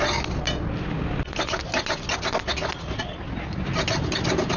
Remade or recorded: recorded